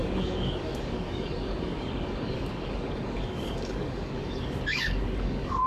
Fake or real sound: fake